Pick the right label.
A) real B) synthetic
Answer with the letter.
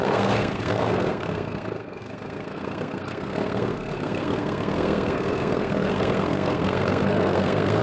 B